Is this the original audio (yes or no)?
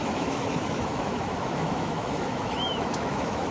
no